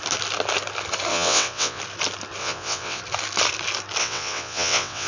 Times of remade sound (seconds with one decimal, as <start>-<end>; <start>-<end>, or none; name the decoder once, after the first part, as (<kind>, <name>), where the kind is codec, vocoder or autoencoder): 1.1-1.8 (vocoder, WaveNeXt); 2.4-3.0; 4.0-5.1